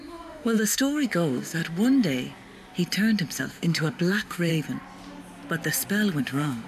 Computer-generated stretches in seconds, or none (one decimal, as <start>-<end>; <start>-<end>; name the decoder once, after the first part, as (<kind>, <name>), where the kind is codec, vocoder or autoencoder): 0.0-1.6 (autoencoder, DAC-VAE); 3.4-4.5; 6.2-6.7